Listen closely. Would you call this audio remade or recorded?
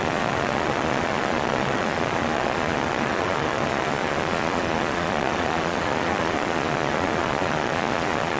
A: remade